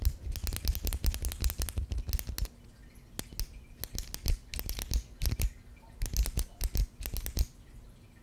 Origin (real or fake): real